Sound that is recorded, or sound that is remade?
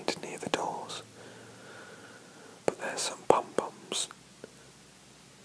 recorded